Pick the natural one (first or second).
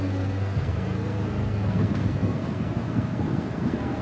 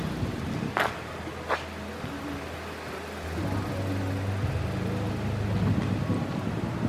second